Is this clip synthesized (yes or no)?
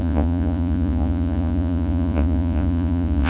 yes